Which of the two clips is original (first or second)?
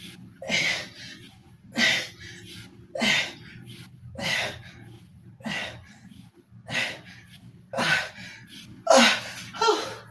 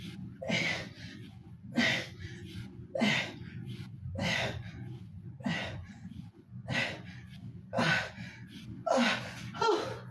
first